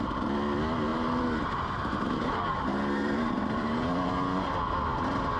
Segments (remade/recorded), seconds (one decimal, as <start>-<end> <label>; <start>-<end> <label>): 0.0-0.9 recorded; 0.9-4.1 remade; 4.1-5.4 recorded